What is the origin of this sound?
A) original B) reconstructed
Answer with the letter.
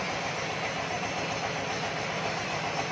A